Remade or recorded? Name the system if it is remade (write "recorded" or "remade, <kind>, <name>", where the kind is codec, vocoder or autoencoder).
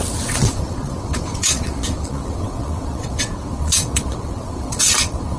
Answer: remade, vocoder, WaveNeXt